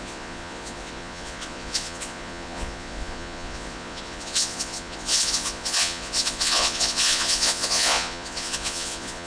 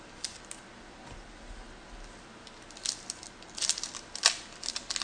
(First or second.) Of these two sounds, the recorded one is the second